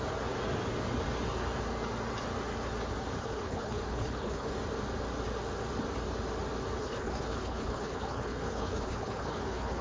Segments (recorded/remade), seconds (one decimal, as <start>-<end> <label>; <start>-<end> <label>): 0.0-3.2 recorded; 3.2-4.5 remade; 4.5-6.8 recorded; 6.8-9.8 remade